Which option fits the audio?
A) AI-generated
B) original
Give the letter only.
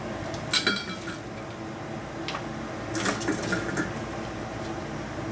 B